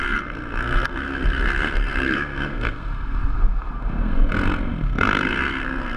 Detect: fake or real fake